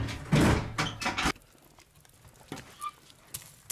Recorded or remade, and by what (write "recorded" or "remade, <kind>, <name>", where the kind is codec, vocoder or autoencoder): recorded